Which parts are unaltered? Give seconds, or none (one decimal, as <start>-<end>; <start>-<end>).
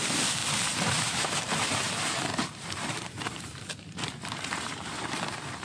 none